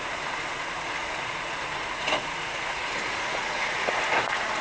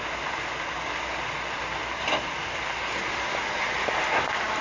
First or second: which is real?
second